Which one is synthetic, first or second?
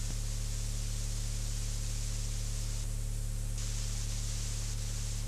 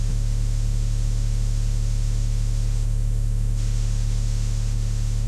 second